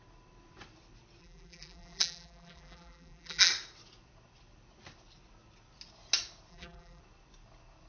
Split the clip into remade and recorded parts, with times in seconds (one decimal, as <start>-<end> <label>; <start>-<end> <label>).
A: 0.0-1.2 recorded; 1.2-3.5 remade; 3.5-6.5 recorded; 6.5-7.0 remade; 7.0-7.9 recorded

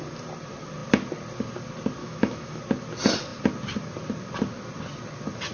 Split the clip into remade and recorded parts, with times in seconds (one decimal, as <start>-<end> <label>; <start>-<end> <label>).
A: 0.0-2.0 recorded; 2.0-2.6 remade; 2.6-5.5 recorded

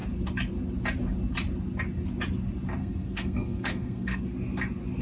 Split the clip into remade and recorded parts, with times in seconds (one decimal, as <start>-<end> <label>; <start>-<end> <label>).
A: 0.0-2.8 recorded; 2.8-4.2 remade; 4.2-5.0 recorded

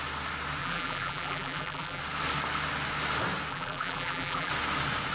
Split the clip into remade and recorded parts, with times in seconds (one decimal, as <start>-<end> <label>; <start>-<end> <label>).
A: 0.0-0.6 recorded; 0.6-2.0 remade; 2.0-3.5 recorded; 3.5-4.5 remade; 4.5-5.1 recorded

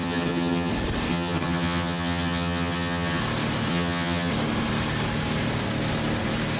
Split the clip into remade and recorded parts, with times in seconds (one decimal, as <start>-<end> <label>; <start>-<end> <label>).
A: 0.0-0.7 remade; 0.7-1.1 recorded; 1.1-3.2 remade; 3.2-3.7 recorded; 3.7-4.3 remade; 4.3-6.6 recorded

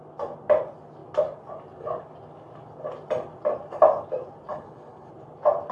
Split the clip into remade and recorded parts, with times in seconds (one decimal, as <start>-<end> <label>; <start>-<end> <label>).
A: 0.0-4.5 recorded; 4.5-5.1 remade; 5.1-5.7 recorded

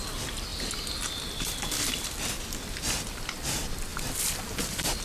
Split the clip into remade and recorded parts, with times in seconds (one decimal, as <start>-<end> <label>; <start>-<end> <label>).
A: 0.0-5.0 recorded

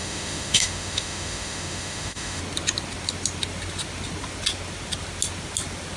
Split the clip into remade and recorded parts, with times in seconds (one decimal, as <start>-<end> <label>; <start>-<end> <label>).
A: 0.0-2.4 remade; 2.4-6.0 recorded